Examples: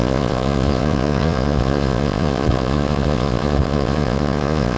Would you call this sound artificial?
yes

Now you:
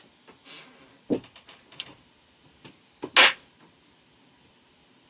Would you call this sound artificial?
no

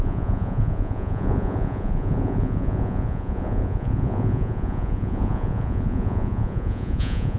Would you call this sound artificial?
yes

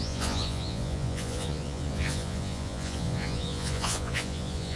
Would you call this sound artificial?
yes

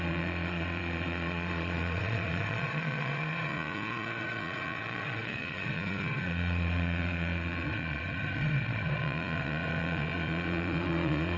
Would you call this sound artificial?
yes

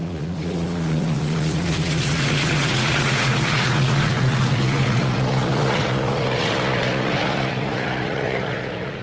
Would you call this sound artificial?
yes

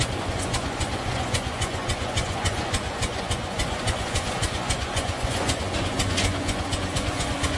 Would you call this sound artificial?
yes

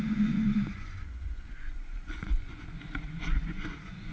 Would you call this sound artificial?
yes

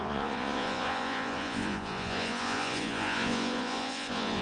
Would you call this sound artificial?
yes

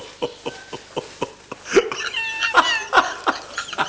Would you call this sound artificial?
no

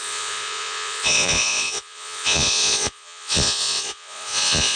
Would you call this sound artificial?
yes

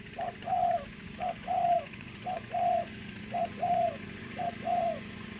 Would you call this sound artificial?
yes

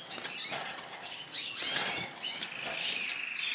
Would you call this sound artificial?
no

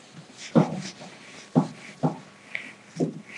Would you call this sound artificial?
no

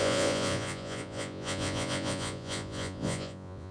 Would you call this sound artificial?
yes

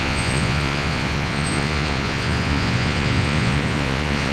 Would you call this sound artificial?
yes